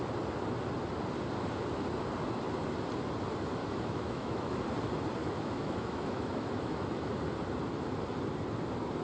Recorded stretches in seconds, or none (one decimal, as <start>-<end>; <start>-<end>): 0.0-3.6; 4.6-5.2; 7.1-9.0